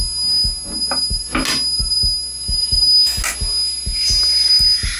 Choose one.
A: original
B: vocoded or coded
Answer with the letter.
A